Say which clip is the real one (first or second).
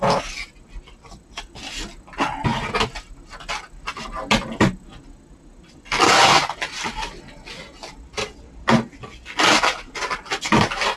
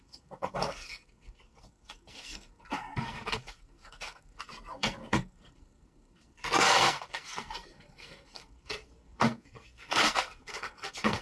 first